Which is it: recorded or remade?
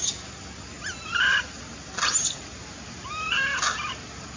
recorded